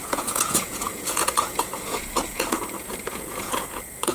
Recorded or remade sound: remade